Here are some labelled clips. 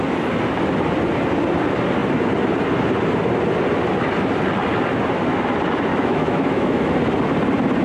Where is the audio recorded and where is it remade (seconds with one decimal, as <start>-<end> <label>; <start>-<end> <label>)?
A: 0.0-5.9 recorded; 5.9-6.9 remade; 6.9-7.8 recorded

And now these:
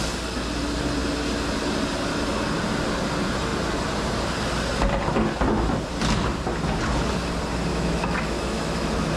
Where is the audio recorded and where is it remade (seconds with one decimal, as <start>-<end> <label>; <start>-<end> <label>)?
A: 0.0-7.7 recorded; 7.7-9.2 remade

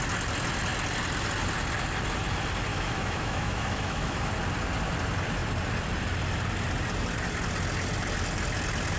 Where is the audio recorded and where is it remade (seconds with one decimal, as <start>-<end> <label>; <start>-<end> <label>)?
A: 0.0-2.7 recorded; 2.7-4.3 remade; 4.3-9.0 recorded